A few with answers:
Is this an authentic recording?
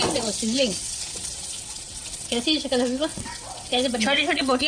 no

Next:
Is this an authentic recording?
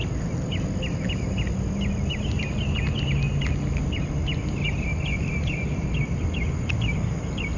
yes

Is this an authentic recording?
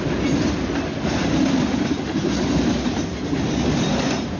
yes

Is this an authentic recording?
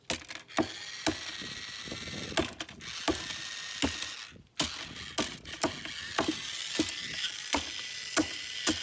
yes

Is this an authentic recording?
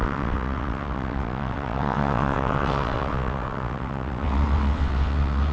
no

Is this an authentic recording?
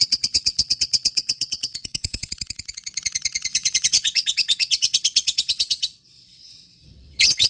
no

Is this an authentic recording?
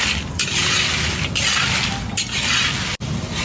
yes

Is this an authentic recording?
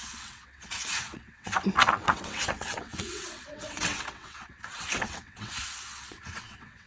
no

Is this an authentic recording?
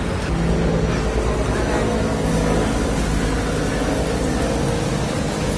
yes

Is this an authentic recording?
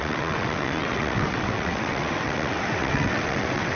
no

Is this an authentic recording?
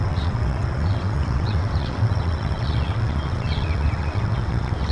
no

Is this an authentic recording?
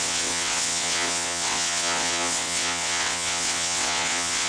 no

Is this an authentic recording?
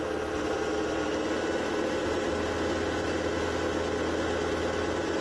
yes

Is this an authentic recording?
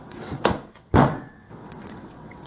no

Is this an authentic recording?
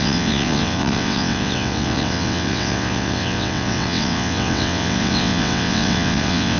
no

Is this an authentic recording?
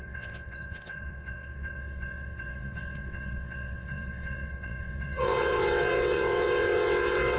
no